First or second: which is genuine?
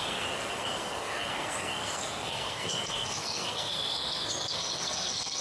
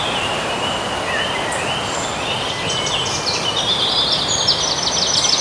second